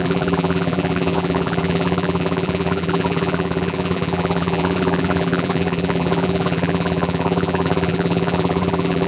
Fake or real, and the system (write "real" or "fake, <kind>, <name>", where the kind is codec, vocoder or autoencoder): fake, vocoder, BigVGAN v2